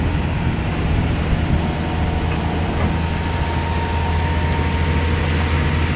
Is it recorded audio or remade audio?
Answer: recorded